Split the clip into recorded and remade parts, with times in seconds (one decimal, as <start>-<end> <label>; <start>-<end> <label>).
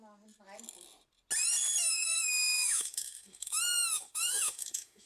0.0-1.9 recorded; 1.9-5.1 remade